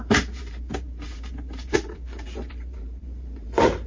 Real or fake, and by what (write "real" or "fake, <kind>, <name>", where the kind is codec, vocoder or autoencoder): fake, vocoder, BigVGAN v2